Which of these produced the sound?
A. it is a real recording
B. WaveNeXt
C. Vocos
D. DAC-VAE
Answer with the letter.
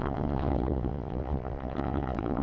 B